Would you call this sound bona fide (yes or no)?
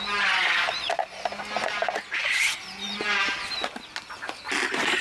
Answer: yes